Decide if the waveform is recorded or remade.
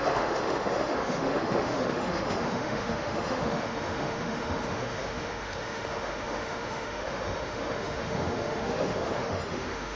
remade